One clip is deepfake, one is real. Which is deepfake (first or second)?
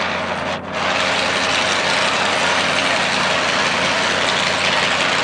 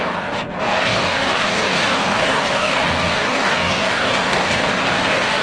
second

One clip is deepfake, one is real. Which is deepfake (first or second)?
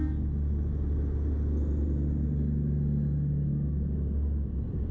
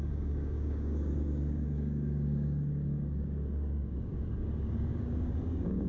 second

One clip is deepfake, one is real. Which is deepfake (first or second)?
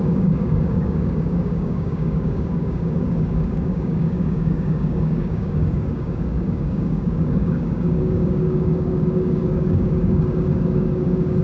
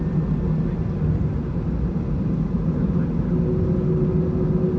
first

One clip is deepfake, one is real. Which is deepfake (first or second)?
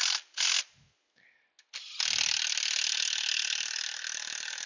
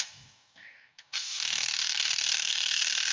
second